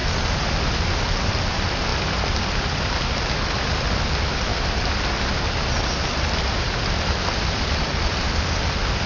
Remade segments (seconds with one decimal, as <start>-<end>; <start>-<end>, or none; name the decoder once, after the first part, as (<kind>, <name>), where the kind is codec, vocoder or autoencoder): none